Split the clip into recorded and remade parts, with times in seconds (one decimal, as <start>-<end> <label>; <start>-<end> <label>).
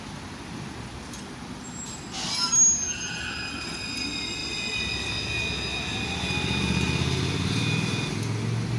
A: 0.0-8.8 recorded